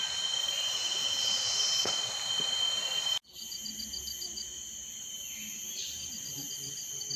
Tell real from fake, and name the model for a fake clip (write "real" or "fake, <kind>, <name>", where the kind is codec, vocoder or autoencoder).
real